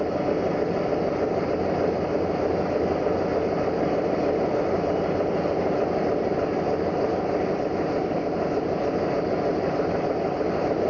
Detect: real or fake real